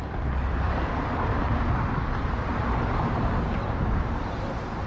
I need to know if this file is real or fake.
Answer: real